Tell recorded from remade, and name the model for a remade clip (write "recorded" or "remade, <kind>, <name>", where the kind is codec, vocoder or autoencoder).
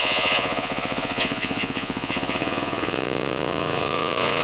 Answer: remade, vocoder, Vocos